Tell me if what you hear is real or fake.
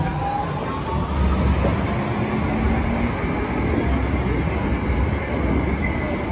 real